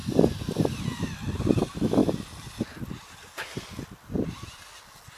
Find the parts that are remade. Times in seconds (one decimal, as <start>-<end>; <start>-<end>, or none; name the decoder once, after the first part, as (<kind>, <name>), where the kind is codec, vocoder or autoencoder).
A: 0.6-2.0 (vocoder, BigVGAN v2)